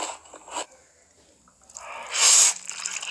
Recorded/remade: recorded